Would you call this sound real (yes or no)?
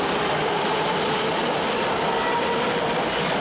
yes